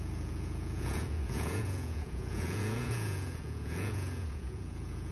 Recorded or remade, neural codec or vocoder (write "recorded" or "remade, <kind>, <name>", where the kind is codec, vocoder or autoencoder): remade, vocoder, Vocos